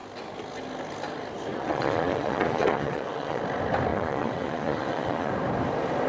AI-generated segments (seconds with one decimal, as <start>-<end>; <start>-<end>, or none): 1.5-3.4; 3.9-5.3

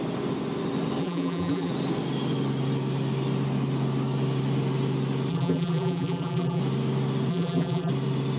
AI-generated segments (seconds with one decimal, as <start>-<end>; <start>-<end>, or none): 1.0-1.7; 5.3-6.6; 7.3-7.9

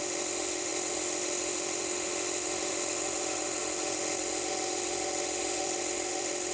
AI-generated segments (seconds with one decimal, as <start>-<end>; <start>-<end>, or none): 0.0-6.5

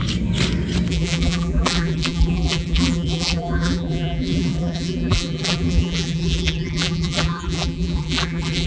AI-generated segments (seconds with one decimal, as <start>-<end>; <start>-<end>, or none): 0.9-8.7

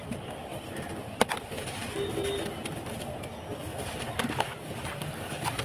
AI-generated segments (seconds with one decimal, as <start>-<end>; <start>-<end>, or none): 3.7-4.4

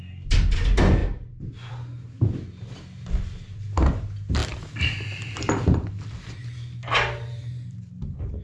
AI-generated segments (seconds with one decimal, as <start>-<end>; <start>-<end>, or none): none

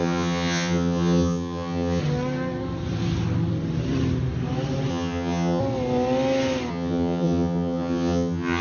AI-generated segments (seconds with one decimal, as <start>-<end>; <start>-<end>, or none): 0.0-2.0; 4.9-5.6; 6.7-8.6

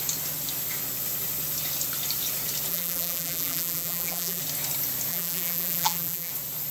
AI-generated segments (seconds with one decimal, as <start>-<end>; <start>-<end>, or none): 2.7-4.4; 5.1-6.3